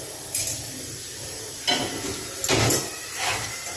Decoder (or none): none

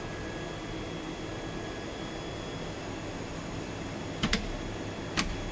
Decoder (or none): none